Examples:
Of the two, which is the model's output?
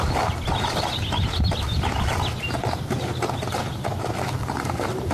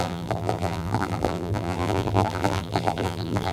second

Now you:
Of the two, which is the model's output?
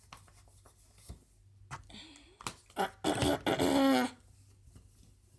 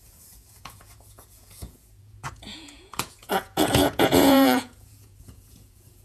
second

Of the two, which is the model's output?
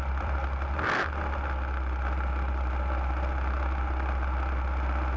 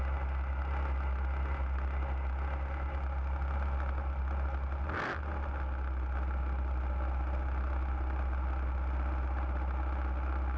first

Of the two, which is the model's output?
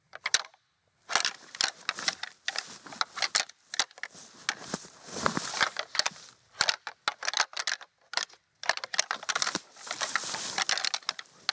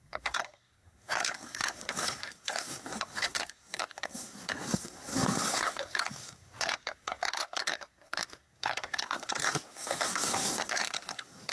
second